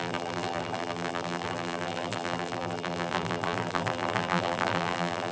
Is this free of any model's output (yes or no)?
no